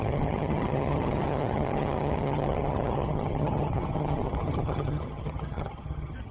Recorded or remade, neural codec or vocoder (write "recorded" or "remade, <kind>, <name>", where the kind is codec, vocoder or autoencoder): remade, vocoder, HiFi-GAN